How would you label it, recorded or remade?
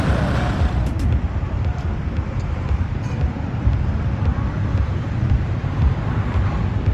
remade